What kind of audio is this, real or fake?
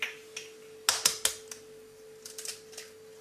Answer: real